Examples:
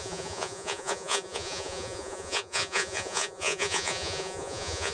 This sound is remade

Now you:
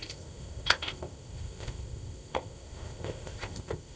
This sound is remade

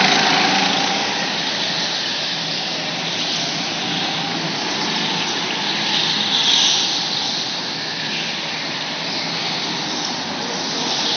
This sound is recorded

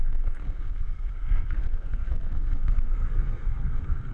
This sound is remade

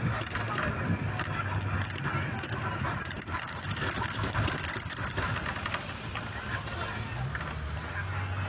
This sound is recorded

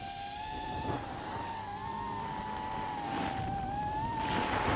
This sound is remade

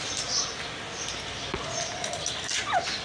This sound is recorded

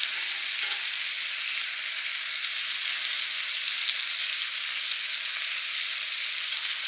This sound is recorded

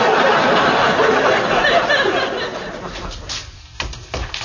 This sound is recorded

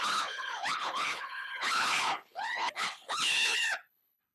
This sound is remade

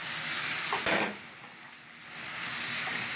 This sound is recorded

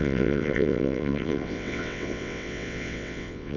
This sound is remade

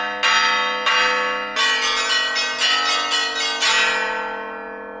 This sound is recorded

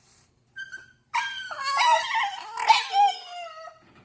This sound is recorded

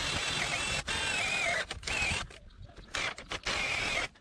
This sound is recorded